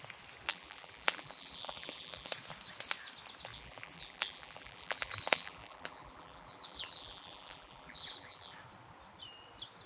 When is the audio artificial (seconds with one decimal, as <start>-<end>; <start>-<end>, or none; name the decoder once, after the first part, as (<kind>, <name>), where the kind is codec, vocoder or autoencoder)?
0.5-2.3 (vocoder, BigVGAN v2); 3.5-8.6